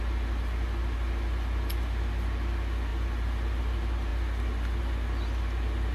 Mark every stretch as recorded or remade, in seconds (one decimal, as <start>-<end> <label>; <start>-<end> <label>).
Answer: 0.0-5.9 recorded

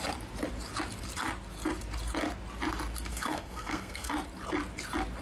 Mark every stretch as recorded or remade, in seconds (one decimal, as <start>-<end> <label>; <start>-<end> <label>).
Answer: 0.0-3.1 recorded; 3.1-4.1 remade; 4.1-5.2 recorded

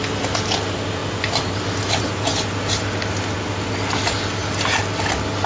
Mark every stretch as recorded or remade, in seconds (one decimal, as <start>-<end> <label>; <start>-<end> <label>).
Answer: 0.0-5.5 recorded

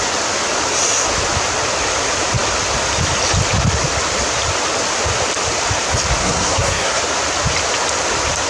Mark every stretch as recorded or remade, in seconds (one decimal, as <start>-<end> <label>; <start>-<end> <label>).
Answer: 0.0-6.2 recorded; 6.2-7.0 remade; 7.0-8.5 recorded